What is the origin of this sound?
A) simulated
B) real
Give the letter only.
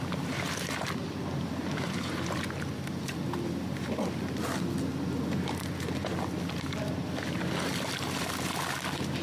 A